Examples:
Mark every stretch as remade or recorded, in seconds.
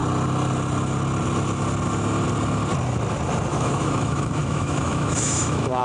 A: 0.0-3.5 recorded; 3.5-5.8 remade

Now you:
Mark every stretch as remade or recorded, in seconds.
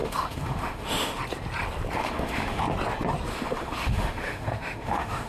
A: 0.0-1.2 remade; 1.2-2.0 recorded; 2.0-2.6 remade; 2.6-3.3 recorded; 3.3-5.3 remade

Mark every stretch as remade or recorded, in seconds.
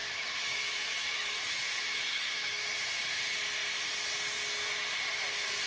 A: 0.0-2.7 remade; 2.7-5.7 recorded